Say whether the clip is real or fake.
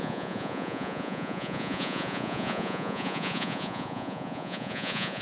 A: fake